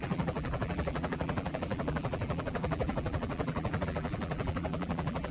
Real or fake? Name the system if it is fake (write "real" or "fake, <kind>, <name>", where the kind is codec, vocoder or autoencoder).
fake, vocoder, BigVGAN v2